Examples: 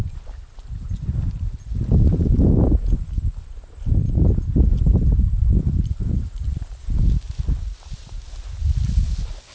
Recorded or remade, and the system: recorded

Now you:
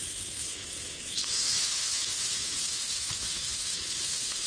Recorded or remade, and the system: remade, autoencoder, DAC-VAE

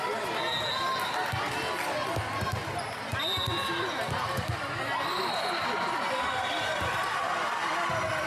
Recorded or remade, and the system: recorded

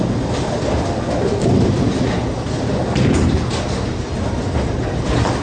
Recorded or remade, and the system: recorded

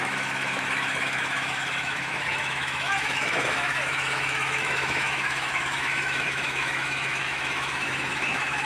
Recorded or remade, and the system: remade, autoencoder, DAC-VAE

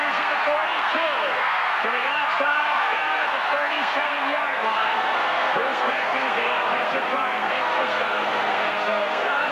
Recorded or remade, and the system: remade, codec, SNAC